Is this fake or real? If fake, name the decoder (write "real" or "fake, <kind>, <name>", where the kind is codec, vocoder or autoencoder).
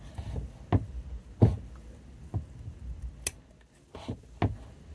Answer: real